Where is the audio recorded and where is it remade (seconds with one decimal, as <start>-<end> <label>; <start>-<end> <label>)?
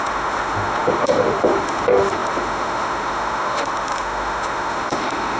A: 0.0-5.4 remade